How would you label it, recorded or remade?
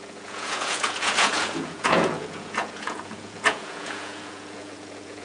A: remade